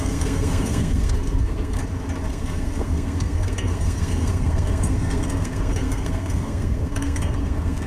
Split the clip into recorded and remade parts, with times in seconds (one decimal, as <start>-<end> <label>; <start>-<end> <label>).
0.0-1.8 remade; 1.8-2.3 recorded; 2.3-7.9 remade